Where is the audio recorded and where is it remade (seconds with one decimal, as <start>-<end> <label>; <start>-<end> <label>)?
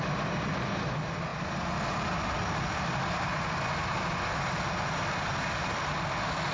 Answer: 0.0-6.5 recorded